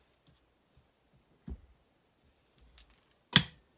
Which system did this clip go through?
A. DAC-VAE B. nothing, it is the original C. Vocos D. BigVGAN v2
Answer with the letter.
B